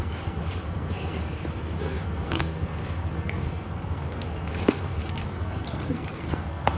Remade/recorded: remade